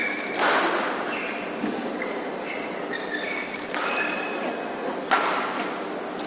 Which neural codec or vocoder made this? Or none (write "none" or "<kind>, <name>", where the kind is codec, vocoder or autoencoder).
none